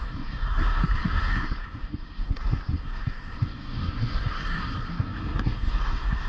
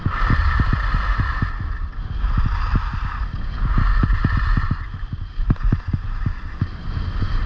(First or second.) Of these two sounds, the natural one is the second